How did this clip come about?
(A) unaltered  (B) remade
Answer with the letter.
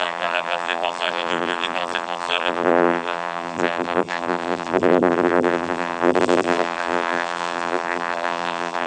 B